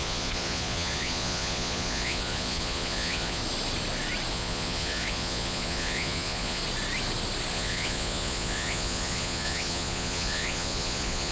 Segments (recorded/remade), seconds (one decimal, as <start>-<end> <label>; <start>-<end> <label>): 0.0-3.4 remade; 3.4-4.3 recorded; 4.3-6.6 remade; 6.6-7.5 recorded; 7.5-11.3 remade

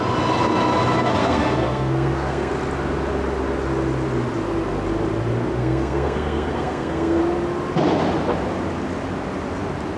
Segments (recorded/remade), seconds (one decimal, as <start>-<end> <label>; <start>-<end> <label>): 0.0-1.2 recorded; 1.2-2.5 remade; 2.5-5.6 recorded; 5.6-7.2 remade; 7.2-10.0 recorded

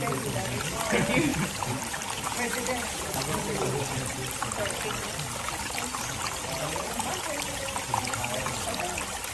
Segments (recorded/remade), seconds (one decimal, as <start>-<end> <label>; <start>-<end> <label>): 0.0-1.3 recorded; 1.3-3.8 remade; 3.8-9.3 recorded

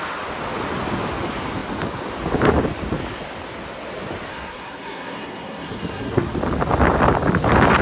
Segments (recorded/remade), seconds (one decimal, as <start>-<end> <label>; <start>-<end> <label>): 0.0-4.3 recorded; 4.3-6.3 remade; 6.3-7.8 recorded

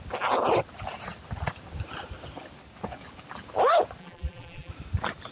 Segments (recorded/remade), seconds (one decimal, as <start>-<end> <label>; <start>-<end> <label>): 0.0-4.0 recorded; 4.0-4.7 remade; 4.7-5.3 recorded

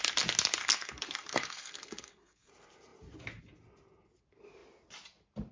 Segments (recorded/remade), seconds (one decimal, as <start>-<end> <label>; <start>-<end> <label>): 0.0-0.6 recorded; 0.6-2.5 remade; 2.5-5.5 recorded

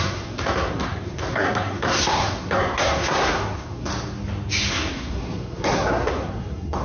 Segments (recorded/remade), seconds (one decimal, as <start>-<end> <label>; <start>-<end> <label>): 0.0-3.9 remade; 3.9-4.7 recorded; 4.7-6.8 remade